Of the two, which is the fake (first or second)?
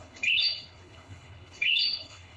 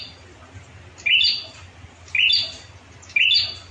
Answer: first